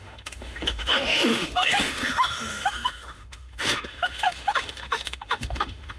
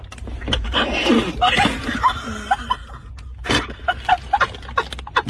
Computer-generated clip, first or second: first